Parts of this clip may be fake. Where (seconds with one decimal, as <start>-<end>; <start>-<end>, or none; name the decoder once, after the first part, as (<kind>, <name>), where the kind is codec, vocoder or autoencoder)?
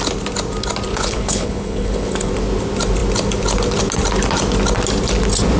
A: 0.9-2.3 (codec, HILCodec)